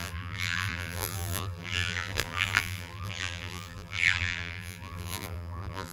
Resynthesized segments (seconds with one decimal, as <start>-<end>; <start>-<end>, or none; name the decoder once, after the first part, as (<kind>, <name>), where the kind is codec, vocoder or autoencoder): 0.0-5.9 (vocoder, BigVGAN v2)